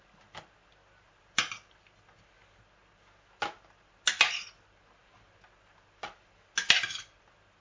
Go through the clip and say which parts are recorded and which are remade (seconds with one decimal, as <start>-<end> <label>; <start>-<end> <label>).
0.0-7.6 recorded